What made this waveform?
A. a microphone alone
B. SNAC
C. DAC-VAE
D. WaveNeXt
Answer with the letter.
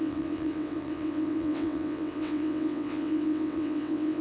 D